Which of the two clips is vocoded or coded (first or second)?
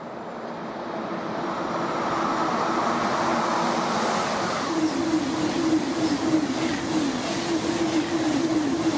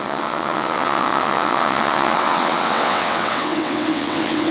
second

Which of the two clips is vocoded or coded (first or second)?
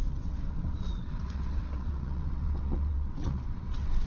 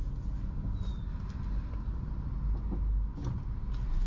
first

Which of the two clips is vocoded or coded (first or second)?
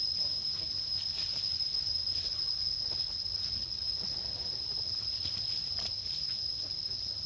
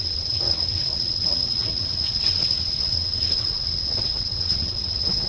second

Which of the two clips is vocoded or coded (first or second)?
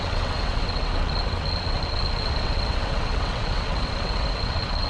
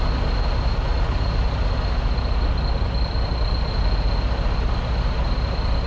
first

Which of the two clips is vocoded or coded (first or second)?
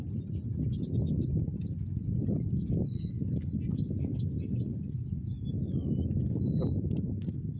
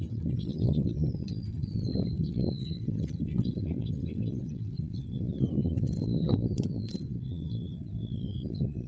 second